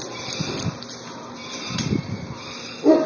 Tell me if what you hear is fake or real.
fake